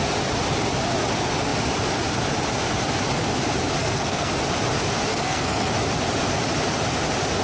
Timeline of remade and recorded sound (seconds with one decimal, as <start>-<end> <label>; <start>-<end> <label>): 0.0-3.8 recorded; 3.8-4.3 remade; 4.3-5.1 recorded; 5.1-5.7 remade; 5.7-7.4 recorded